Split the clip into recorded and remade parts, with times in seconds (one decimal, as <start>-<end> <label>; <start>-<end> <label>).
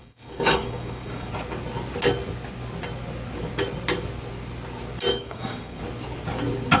0.0-1.3 remade; 1.3-5.1 recorded; 5.1-5.8 remade; 5.8-6.8 recorded